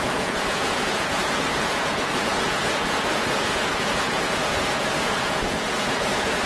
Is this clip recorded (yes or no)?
no